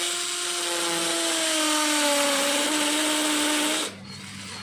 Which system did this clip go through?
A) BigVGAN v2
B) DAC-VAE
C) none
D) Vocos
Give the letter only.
C